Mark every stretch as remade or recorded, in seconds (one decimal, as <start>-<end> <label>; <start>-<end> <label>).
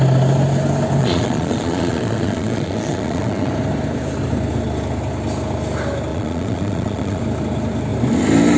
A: 0.0-1.0 recorded; 1.0-3.5 remade; 3.5-6.1 recorded; 6.1-7.2 remade; 7.2-8.6 recorded